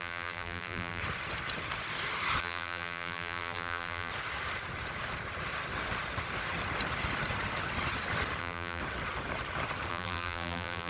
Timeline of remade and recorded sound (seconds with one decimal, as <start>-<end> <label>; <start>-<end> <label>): 0.0-1.0 remade; 1.0-2.4 recorded; 2.4-4.1 remade; 4.1-8.4 recorded; 8.4-8.8 remade; 8.8-9.9 recorded; 9.9-10.9 remade